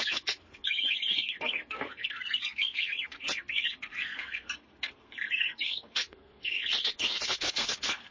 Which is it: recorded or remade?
remade